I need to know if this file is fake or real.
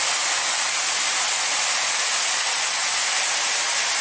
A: real